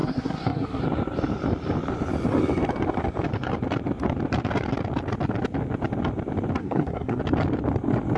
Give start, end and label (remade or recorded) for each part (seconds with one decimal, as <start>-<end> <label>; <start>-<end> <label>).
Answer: 0.0-0.8 remade; 0.8-6.6 recorded; 6.6-7.2 remade; 7.2-8.2 recorded